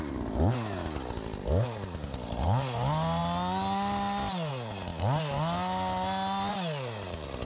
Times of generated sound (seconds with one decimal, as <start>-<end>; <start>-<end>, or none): none